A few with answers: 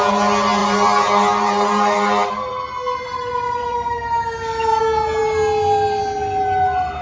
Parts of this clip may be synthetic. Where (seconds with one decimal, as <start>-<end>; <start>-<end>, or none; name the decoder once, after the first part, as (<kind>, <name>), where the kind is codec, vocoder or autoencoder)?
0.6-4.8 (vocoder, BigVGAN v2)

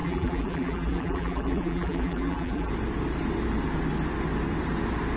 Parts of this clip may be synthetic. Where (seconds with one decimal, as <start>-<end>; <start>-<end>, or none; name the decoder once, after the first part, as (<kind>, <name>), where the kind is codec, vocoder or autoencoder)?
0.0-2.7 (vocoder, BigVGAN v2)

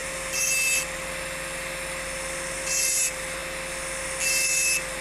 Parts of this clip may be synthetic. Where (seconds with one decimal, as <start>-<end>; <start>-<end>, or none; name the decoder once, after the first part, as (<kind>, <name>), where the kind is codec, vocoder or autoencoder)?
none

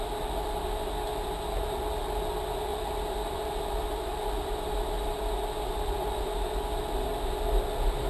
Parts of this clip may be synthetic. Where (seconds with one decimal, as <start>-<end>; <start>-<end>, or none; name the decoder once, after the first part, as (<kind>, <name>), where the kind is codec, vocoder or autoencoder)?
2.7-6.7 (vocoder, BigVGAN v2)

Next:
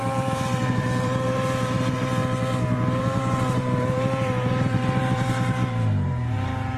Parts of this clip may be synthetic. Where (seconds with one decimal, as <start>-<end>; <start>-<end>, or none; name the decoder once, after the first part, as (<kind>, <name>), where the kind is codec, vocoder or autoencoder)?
0.0-2.2 (vocoder, BigVGAN v2); 3.0-6.8

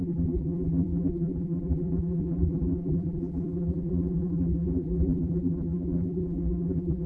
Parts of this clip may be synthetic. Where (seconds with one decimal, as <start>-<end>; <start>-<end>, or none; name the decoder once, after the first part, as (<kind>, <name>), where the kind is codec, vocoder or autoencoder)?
0.0-7.1 (vocoder, BigVGAN v2)

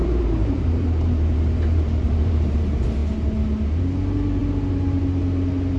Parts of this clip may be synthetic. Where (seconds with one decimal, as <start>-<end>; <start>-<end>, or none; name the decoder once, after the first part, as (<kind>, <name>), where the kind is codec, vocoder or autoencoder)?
0.0-2.5 (vocoder, BigVGAN v2)